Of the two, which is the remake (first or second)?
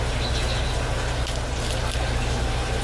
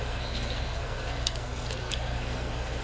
second